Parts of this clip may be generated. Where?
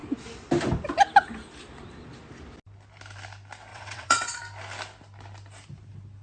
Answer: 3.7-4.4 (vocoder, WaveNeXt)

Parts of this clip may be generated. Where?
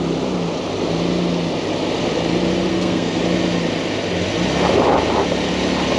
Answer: 2.7-3.2 (codec, SNAC)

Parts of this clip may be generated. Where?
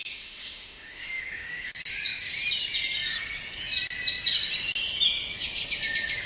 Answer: 0.0-1.7 (autoencoder, DAC-VAE)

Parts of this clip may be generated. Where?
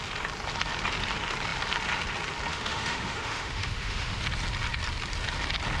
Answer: 2.5-4.2 (autoencoder, DAC-VAE)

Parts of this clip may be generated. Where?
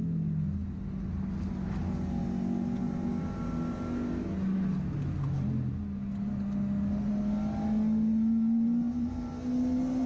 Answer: none